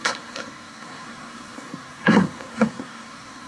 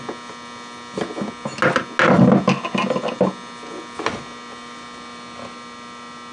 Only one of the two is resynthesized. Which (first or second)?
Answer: first